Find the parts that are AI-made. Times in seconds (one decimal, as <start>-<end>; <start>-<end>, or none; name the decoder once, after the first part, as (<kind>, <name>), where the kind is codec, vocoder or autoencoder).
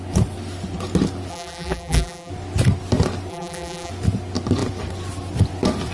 1.3-2.3 (vocoder, BigVGAN v2); 3.3-3.9